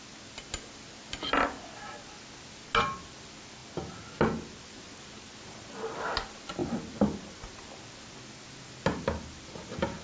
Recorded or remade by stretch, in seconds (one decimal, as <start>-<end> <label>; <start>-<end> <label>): 0.0-10.0 recorded